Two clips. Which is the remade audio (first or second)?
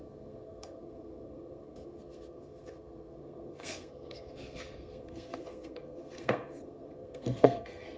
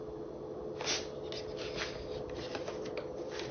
first